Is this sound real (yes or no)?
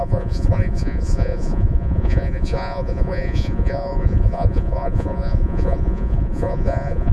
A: no